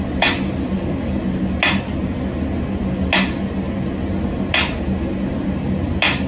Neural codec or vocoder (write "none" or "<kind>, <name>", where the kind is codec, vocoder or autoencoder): none